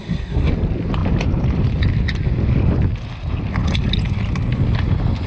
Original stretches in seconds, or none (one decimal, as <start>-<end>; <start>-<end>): 0.5-5.3